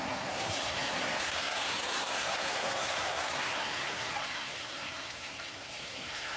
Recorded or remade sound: remade